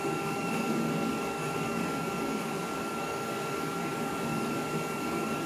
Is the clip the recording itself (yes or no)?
no